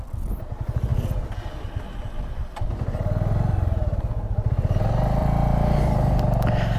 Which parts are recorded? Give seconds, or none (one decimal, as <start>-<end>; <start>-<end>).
0.0-5.2; 5.8-6.8